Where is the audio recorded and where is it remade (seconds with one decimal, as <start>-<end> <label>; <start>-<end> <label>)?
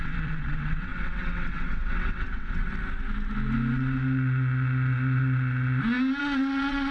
0.0-2.6 remade; 2.6-6.2 recorded; 6.2-6.9 remade